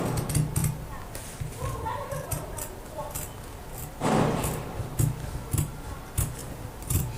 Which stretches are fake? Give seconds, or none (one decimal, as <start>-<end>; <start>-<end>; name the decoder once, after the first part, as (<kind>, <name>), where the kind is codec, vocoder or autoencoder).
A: 0.6-4.7 (vocoder, BigVGAN v2); 6.4-7.2